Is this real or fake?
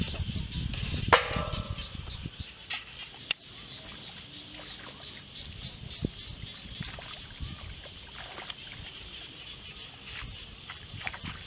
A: real